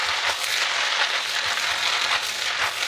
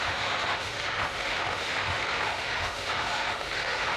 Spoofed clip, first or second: second